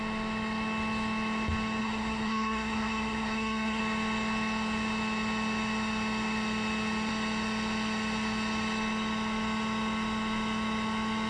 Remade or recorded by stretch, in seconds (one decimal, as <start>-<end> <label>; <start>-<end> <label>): 0.0-1.8 recorded; 1.8-3.8 remade; 3.8-11.3 recorded